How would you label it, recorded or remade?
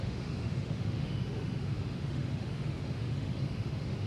remade